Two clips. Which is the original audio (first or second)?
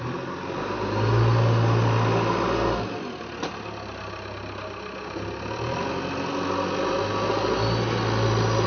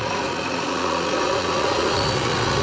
first